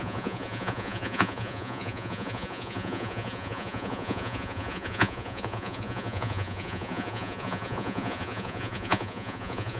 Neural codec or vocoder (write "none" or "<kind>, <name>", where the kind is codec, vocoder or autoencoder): vocoder, Vocos